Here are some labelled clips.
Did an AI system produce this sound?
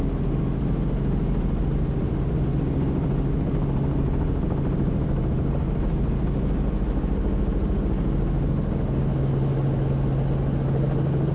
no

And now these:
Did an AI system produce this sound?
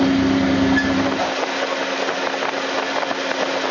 no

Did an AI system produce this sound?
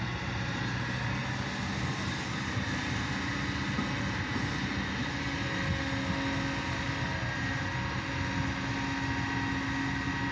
no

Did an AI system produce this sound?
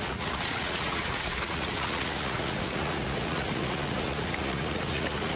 yes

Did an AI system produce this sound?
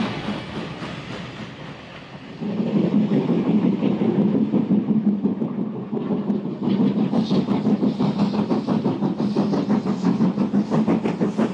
no